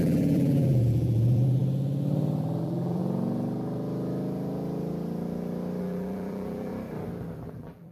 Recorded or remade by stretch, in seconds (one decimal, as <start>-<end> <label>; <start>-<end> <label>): 0.0-1.6 remade; 1.6-2.6 recorded; 2.6-3.0 remade; 3.0-5.8 recorded; 5.8-6.7 remade; 6.7-7.5 recorded; 7.5-7.9 remade